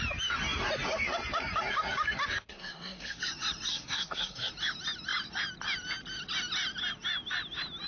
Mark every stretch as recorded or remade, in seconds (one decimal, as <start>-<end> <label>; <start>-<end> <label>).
0.0-2.4 recorded; 2.4-3.2 remade; 3.2-3.7 recorded; 3.7-4.5 remade; 4.5-7.9 recorded